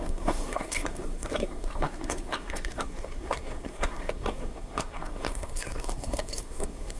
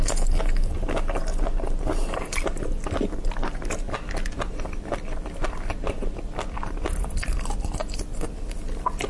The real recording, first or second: second